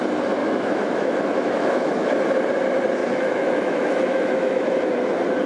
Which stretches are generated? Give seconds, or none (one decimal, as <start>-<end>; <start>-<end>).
0.4-2.2; 3.0-4.9